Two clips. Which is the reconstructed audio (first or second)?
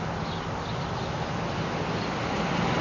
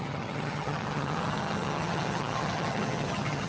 second